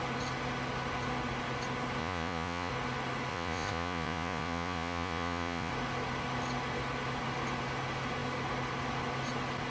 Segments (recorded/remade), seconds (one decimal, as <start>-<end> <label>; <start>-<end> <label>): 0.0-2.0 recorded; 2.0-2.7 remade; 2.7-3.3 recorded; 3.3-5.7 remade; 5.7-9.7 recorded